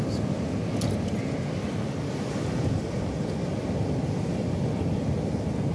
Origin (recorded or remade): recorded